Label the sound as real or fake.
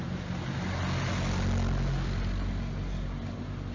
real